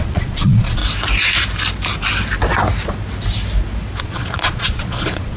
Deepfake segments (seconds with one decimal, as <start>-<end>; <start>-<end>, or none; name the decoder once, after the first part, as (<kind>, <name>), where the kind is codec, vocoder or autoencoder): 0.0-0.8 (vocoder, Vocos); 4.0-5.4